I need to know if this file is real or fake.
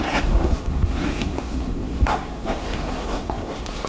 fake